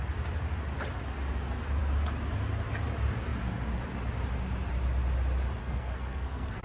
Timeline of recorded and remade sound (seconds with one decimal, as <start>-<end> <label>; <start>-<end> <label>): 0.0-5.6 recorded; 5.6-6.6 remade

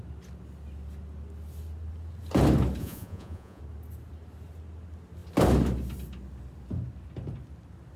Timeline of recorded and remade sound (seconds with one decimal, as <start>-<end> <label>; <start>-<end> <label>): 0.0-2.8 recorded; 2.8-3.6 remade; 3.6-8.0 recorded